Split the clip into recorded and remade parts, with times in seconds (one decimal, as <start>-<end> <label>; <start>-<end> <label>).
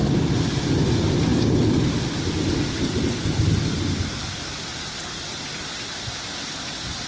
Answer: 0.0-0.8 remade; 0.8-4.7 recorded; 4.7-5.6 remade; 5.6-7.1 recorded